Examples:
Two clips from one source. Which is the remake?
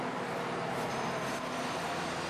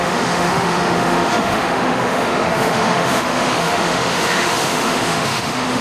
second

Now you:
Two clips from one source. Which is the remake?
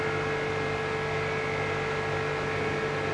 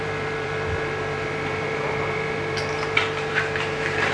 second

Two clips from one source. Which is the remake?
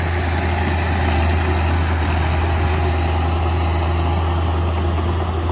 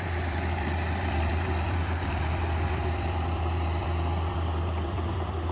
second